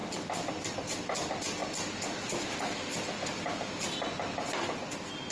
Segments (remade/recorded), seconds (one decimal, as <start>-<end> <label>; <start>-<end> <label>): 0.0-5.3 recorded